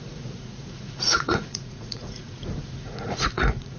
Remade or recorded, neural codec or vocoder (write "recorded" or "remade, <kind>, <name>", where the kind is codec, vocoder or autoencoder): remade, vocoder, Vocos